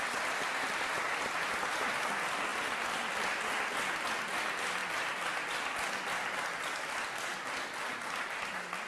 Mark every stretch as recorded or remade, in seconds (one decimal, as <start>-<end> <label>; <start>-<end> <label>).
0.0-8.9 recorded